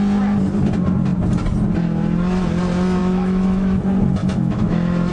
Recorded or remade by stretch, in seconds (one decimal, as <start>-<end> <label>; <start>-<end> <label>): 0.0-3.0 recorded; 3.0-3.8 remade; 3.8-4.2 recorded; 4.2-5.1 remade